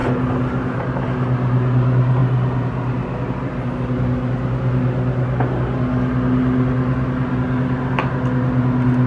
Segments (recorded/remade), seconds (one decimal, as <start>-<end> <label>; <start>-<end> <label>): 0.0-0.8 remade; 0.8-9.1 recorded